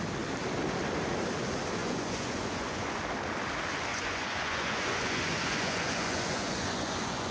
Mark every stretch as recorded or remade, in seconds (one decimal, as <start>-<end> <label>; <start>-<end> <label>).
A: 0.0-1.8 recorded; 1.8-3.0 remade; 3.0-3.9 recorded; 3.9-7.3 remade